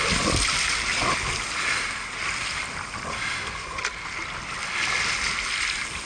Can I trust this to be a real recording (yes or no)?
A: yes